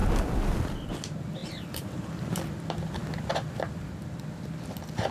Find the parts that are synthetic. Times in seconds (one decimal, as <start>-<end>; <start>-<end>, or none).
1.4-2.1